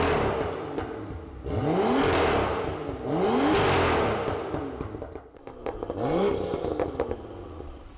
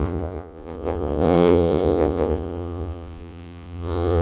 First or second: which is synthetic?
second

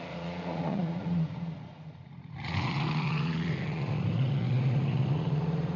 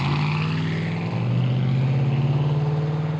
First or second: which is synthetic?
first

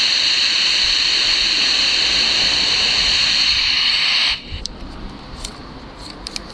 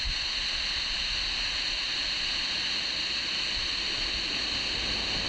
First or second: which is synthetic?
first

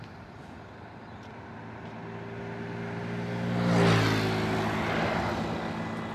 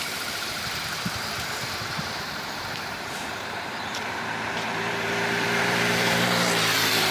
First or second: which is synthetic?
second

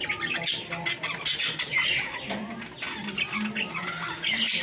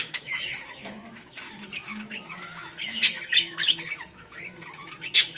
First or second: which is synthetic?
second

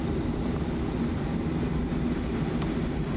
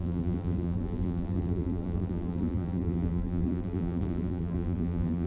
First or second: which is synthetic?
second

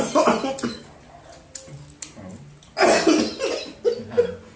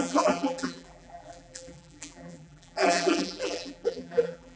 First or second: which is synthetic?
second